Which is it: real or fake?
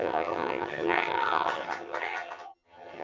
fake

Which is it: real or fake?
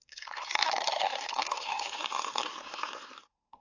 fake